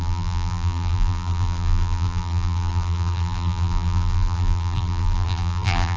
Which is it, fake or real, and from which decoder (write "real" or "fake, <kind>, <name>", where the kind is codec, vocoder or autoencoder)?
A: fake, vocoder, BigVGAN v2